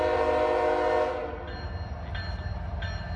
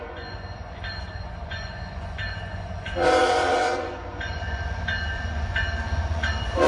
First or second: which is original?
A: first